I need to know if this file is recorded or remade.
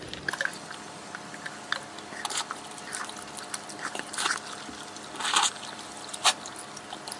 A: recorded